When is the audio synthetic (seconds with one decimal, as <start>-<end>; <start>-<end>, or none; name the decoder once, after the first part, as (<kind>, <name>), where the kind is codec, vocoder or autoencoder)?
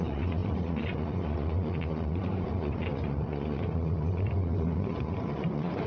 0.0-5.9 (vocoder, Vocos)